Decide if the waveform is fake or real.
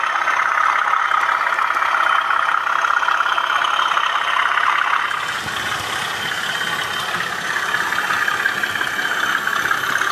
real